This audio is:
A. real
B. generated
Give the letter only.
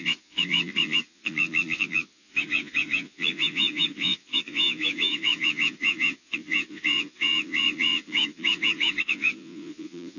B